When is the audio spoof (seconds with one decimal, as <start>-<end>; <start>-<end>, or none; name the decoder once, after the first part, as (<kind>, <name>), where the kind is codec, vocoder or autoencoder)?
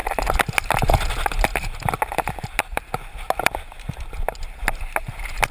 none